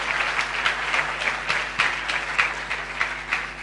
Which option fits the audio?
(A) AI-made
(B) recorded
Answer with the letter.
B